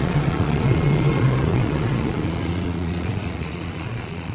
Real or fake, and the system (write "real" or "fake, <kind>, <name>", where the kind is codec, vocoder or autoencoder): fake, vocoder, Vocos